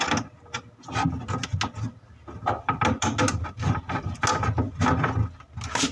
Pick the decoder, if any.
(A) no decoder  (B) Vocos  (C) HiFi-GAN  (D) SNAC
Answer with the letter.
A